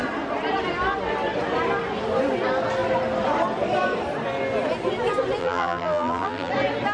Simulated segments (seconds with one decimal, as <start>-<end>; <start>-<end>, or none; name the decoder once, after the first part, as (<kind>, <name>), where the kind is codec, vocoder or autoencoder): 5.4-6.5 (vocoder, BigVGAN v2)